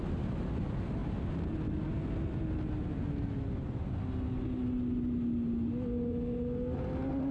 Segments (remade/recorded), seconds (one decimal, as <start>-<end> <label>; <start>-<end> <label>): 0.0-7.3 recorded